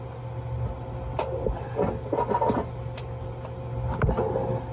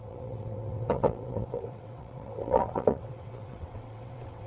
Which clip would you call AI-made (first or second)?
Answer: second